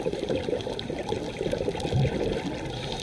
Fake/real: fake